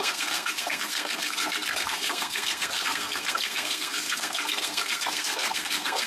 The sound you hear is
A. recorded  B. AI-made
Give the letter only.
B